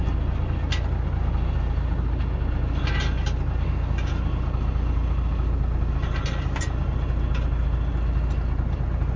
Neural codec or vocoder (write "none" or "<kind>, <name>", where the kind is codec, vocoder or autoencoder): none